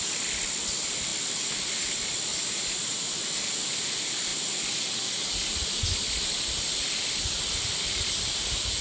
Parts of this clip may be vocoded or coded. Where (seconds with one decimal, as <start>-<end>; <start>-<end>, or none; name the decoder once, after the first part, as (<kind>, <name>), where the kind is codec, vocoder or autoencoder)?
2.3-3.2 (vocoder, BigVGAN v2)